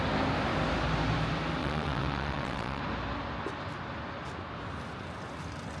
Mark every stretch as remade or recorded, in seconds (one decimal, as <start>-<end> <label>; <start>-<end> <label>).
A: 0.0-1.6 recorded; 1.6-2.8 remade; 2.8-5.8 recorded